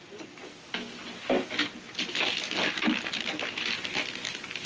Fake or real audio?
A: real